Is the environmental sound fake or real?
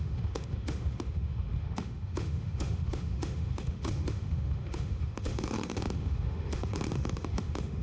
fake